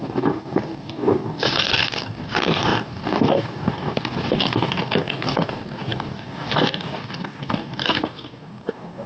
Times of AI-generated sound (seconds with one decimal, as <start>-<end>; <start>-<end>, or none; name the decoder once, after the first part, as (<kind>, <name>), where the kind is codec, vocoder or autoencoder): 0.0-9.1 (codec, DAC)